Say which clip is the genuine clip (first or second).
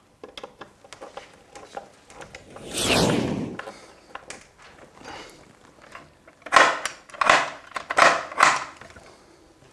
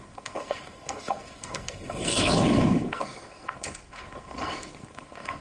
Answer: first